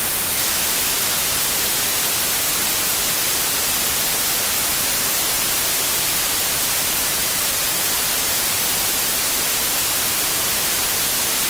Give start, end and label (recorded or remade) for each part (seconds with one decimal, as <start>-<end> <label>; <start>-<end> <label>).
0.0-7.2 recorded; 7.2-7.9 remade; 7.9-11.5 recorded